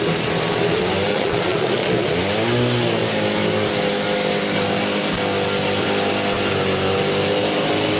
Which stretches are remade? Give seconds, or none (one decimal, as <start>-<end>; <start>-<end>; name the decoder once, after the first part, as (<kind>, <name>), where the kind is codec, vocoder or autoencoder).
1.1-1.9 (vocoder, Vocos)